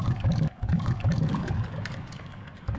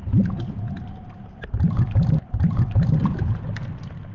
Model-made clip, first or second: first